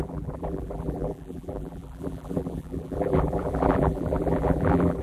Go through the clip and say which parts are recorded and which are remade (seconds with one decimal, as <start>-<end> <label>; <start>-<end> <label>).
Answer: 0.0-5.0 remade